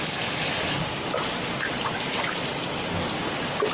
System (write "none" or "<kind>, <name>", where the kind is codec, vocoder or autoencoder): none